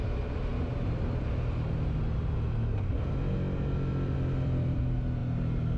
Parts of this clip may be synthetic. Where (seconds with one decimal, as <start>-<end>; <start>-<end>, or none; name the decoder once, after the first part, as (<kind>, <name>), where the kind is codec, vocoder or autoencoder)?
3.9-4.8 (vocoder, BigVGAN v2)